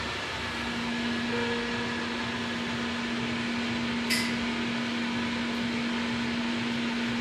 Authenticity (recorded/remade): recorded